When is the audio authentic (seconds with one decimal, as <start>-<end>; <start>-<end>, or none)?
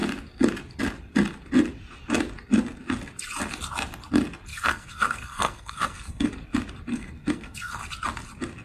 0.0-4.5; 6.3-6.9; 7.8-8.6